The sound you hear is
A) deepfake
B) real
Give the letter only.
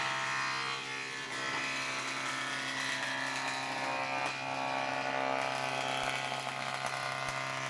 B